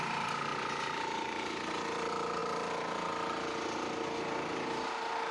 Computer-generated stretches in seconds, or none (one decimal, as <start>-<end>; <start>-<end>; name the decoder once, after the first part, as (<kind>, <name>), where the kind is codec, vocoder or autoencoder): none